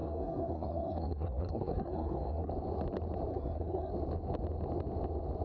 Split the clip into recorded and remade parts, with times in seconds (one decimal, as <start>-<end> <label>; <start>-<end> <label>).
0.0-2.5 remade; 2.5-3.3 recorded; 3.3-3.9 remade; 3.9-5.4 recorded